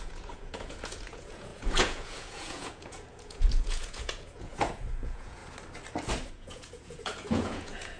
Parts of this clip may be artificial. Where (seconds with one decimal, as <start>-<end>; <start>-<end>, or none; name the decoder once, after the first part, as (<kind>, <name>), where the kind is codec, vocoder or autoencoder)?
0.0-5.4 (vocoder, Vocos); 6.3-8.0